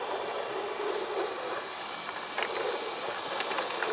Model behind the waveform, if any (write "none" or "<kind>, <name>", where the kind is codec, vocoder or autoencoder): none